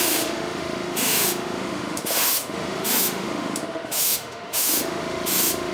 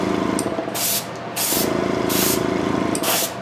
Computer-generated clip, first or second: first